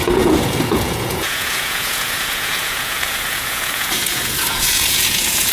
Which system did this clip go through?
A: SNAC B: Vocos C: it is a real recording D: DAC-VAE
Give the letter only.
B